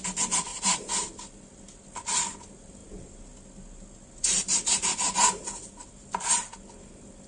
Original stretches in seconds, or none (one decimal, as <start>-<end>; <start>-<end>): 0.0-7.3